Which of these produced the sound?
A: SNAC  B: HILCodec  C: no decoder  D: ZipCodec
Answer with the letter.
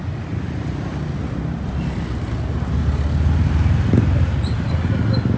C